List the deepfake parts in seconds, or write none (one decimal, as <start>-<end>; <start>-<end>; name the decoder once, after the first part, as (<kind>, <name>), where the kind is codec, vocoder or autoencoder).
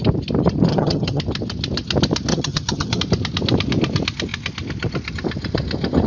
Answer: 0.7-1.2 (vocoder, HiFi-GAN); 2.3-3.0